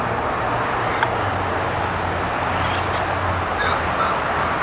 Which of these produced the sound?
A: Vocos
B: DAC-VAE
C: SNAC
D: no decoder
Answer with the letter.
D